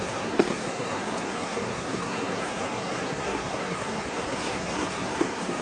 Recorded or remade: remade